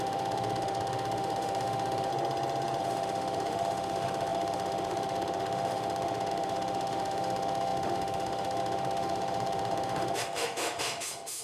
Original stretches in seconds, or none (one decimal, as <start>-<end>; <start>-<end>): 2.1-2.8